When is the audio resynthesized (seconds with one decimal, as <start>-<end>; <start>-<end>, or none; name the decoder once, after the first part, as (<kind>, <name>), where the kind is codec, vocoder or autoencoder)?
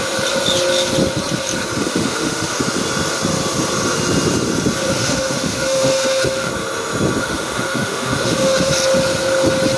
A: 1.8-2.6 (autoencoder, DAC-VAE); 5.0-6.5; 7.2-8.7